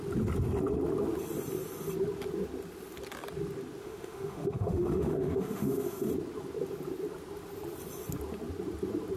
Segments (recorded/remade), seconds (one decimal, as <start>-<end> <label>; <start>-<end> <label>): 0.0-3.8 recorded; 3.8-6.1 remade; 6.1-9.2 recorded